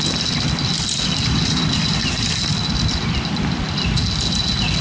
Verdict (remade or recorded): recorded